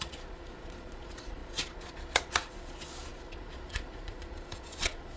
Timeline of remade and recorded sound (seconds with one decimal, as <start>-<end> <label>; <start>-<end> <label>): 0.0-5.2 remade